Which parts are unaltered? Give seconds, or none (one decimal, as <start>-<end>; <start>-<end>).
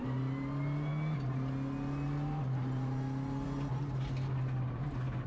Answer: 0.0-5.3